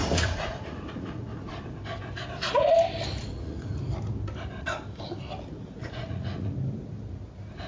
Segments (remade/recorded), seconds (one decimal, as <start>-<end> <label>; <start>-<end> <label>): 0.0-1.5 remade; 1.5-3.2 recorded; 3.2-3.8 remade; 3.8-5.8 recorded; 5.8-6.5 remade; 6.5-7.7 recorded